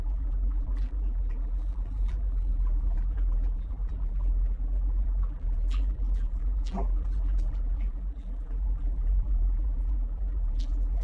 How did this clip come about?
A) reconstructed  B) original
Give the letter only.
A